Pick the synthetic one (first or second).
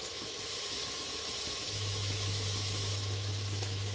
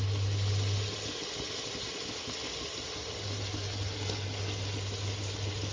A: first